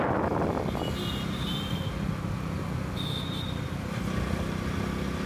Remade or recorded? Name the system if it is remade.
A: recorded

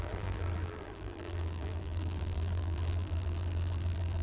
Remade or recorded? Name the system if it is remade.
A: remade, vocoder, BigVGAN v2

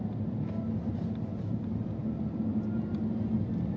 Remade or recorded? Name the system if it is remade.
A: recorded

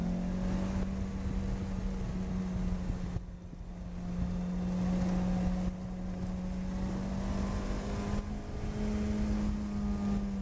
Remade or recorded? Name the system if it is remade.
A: recorded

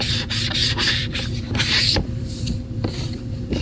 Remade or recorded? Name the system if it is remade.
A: remade, vocoder, BigVGAN v2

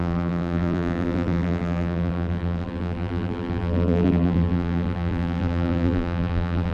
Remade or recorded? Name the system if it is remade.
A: remade, vocoder, BigVGAN v2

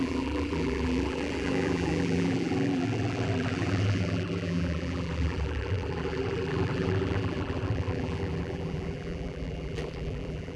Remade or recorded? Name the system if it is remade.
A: remade, vocoder, BigVGAN v2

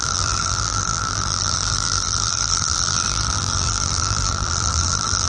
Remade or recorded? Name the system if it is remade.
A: remade, vocoder, BigVGAN v2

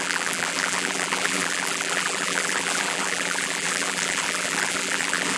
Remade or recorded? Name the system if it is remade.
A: remade, vocoder, BigVGAN v2